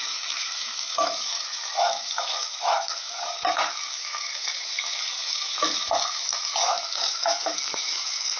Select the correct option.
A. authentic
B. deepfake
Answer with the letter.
B